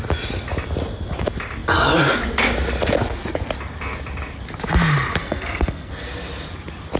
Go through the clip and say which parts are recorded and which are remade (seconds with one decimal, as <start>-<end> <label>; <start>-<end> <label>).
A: 0.0-5.2 recorded; 5.2-5.9 remade; 5.9-7.0 recorded